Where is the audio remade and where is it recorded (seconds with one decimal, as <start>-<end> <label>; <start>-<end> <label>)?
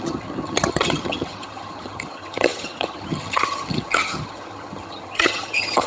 0.0-5.9 remade